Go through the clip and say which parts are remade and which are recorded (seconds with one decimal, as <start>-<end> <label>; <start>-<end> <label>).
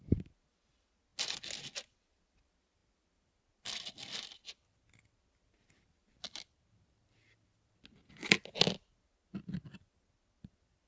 0.0-10.9 recorded